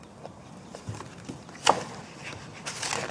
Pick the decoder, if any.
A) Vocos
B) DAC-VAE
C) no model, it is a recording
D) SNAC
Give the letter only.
C